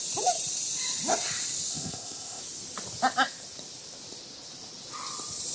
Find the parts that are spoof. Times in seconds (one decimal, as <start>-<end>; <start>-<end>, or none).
1.7-2.4